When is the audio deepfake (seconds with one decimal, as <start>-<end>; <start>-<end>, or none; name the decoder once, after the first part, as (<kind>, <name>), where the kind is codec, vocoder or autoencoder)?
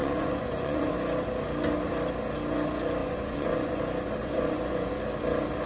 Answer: 0.0-0.9 (vocoder, Vocos); 3.0-3.8; 4.2-4.9